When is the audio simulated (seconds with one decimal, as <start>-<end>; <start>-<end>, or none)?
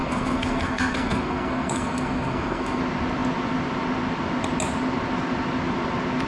0.0-2.8